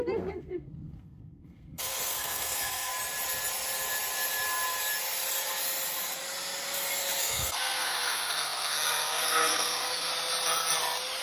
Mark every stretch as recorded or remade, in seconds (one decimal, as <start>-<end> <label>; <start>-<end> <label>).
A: 0.0-2.9 remade; 2.9-7.2 recorded; 7.2-10.1 remade; 10.1-11.2 recorded